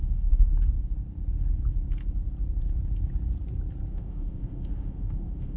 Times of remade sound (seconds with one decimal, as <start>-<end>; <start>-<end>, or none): 0.0-0.5; 3.9-5.6